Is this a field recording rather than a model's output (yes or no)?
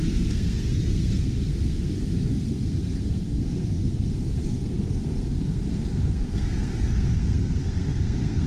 no